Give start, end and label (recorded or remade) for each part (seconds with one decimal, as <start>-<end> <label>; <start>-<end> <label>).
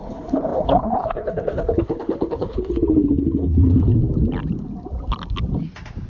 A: 0.0-3.7 remade; 3.7-6.1 recorded